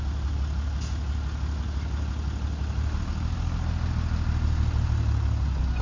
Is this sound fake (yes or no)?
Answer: no